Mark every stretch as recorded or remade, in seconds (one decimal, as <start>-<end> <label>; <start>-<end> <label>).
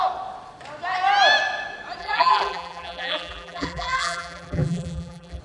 0.0-2.0 recorded; 2.0-5.4 remade